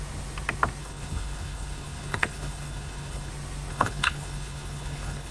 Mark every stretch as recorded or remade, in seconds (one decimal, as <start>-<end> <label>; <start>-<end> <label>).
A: 0.0-0.8 recorded; 0.8-3.3 remade; 3.3-3.7 recorded; 3.7-5.3 remade